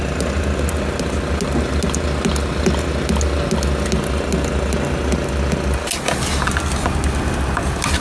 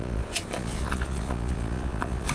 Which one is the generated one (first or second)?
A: second